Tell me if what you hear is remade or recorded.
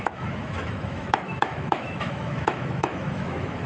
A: remade